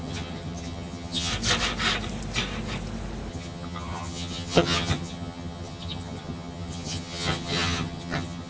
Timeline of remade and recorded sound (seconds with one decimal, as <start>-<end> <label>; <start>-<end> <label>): 0.0-1.3 remade; 1.3-3.3 recorded; 3.3-8.5 remade

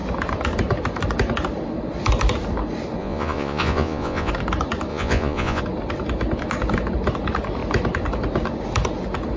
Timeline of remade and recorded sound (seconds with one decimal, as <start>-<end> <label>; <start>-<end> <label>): 0.0-3.0 recorded; 3.0-4.3 remade; 4.3-4.9 recorded; 4.9-5.6 remade; 5.6-9.4 recorded